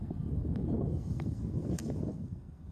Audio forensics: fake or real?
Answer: fake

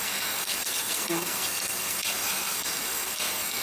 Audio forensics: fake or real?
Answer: fake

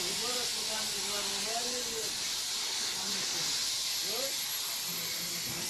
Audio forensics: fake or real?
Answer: real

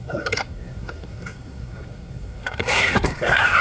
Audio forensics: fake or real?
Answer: fake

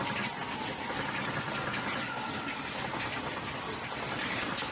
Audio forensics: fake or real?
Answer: real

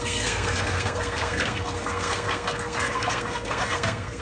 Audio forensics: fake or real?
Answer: fake